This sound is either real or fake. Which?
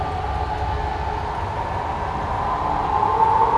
real